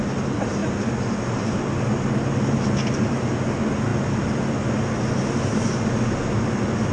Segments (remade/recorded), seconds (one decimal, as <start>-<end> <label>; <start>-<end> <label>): 0.0-6.9 recorded